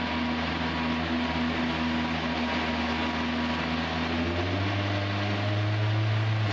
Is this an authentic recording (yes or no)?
yes